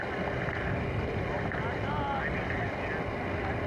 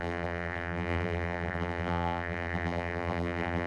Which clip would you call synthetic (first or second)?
second